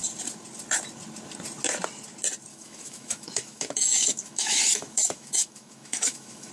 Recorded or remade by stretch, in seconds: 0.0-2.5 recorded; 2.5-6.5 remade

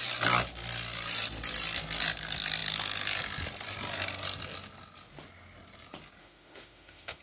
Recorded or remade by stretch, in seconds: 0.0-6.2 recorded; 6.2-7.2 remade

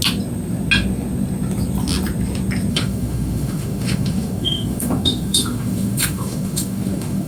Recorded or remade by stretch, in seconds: 0.0-2.7 recorded; 2.7-7.3 remade